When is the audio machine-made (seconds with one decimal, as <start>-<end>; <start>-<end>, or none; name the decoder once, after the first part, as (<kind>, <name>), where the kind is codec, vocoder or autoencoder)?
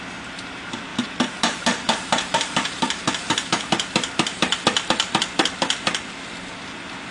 0.9-3.6 (vocoder, BigVGAN v2)